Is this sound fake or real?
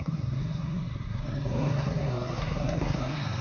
fake